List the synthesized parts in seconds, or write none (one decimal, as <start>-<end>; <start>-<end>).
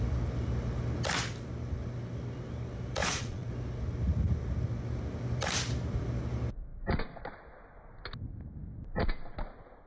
3.0-3.5